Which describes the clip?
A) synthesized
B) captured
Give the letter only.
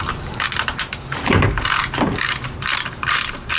A